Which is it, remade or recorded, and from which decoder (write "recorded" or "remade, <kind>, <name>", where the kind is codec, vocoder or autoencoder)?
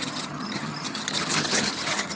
remade, vocoder, HiFi-GAN